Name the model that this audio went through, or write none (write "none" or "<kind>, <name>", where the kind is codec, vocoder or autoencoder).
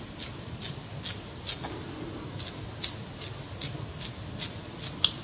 none